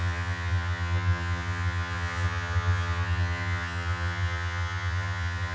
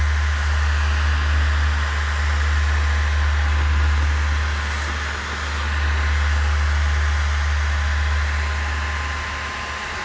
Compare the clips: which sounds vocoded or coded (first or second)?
first